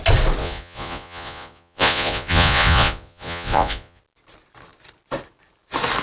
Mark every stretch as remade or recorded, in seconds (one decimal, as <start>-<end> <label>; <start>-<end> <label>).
0.0-0.4 recorded; 0.4-4.0 remade; 4.0-6.0 recorded